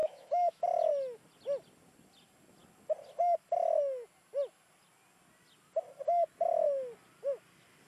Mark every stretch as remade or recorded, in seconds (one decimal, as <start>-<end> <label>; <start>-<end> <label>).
0.0-0.6 remade; 0.6-7.9 recorded